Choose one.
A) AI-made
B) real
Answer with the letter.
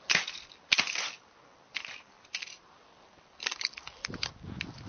B